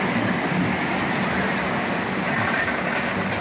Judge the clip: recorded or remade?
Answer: recorded